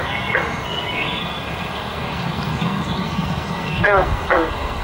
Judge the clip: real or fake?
fake